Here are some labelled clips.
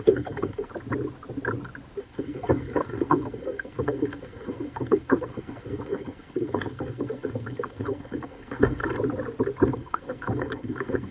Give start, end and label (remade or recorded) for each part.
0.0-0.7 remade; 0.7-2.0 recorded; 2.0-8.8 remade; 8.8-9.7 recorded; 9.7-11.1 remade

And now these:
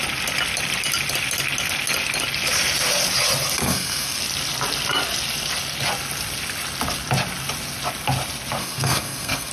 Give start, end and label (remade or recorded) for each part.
0.0-3.6 recorded; 3.6-4.2 remade; 4.2-8.6 recorded; 8.6-9.5 remade

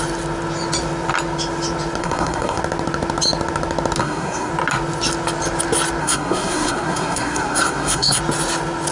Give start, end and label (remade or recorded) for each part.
0.0-2.0 recorded; 2.0-2.6 remade; 2.6-4.0 recorded; 4.0-4.5 remade; 4.5-6.0 recorded; 6.0-8.2 remade; 8.2-8.9 recorded